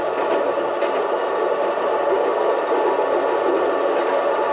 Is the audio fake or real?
real